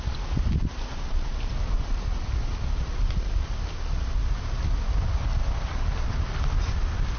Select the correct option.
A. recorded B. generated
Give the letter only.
A